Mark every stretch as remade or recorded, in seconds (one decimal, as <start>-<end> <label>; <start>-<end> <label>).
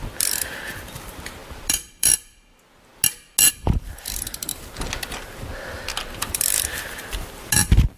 0.0-2.9 remade; 2.9-3.8 recorded; 3.8-4.5 remade; 4.5-5.0 recorded; 5.0-8.0 remade